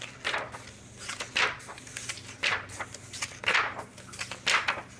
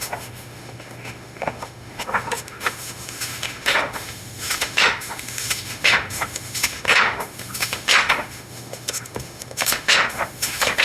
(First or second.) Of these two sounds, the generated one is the second